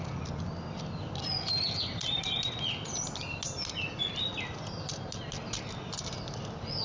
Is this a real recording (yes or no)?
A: yes